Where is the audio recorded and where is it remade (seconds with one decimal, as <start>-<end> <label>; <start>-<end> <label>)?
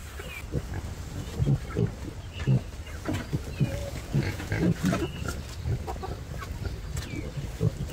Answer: 0.0-3.8 recorded; 3.8-4.5 remade; 4.5-7.9 recorded